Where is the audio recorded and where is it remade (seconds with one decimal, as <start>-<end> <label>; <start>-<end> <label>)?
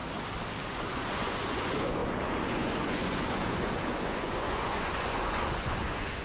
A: 0.0-0.6 recorded; 0.6-6.2 remade